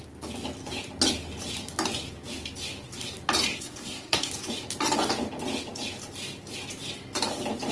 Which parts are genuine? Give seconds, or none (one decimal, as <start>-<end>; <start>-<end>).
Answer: 0.0-3.5; 4.3-7.7

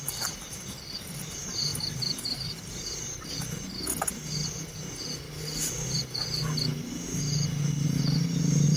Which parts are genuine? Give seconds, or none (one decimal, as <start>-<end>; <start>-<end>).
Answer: 0.0-1.7; 3.3-8.8

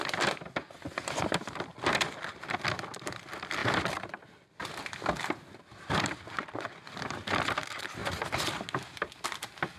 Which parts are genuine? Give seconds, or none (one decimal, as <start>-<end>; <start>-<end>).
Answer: 0.0-9.8

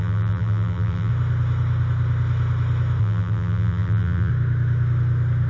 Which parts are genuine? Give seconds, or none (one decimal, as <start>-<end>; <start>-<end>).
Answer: 1.1-3.0; 4.3-5.5